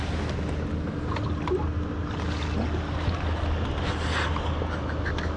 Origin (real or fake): real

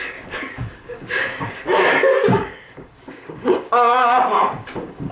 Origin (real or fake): fake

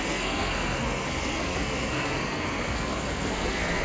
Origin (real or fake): fake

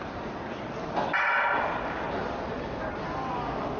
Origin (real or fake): real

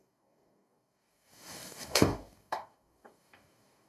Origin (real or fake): fake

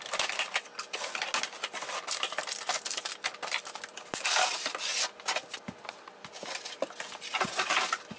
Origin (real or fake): real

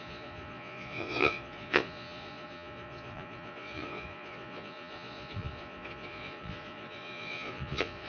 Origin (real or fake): fake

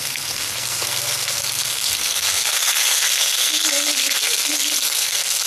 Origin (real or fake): fake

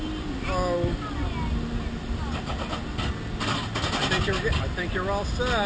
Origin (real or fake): real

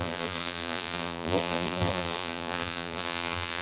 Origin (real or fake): fake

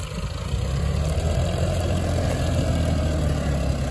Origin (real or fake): real